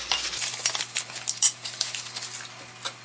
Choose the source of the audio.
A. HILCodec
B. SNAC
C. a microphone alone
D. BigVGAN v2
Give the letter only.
C